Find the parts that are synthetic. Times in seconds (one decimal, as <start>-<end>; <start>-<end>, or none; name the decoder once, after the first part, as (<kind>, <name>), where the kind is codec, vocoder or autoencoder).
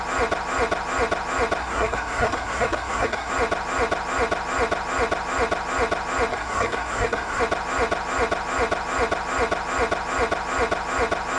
1.6-3.3 (codec, SNAC); 6.3-7.4